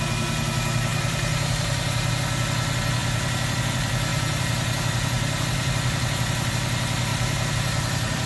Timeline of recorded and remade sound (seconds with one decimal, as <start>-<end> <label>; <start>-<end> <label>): 0.0-0.9 recorded; 0.9-2.1 remade; 2.1-3.0 recorded; 3.0-3.6 remade; 3.6-4.1 recorded; 4.1-6.5 remade; 6.5-7.1 recorded; 7.1-8.3 remade